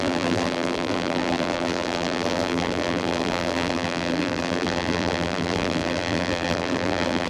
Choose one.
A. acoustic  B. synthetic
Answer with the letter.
B